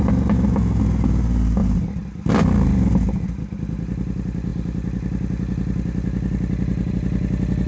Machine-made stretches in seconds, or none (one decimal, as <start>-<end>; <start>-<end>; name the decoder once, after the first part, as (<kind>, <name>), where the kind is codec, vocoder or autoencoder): none